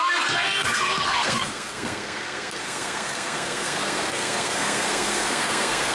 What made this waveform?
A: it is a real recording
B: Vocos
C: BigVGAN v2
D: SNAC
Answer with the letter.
D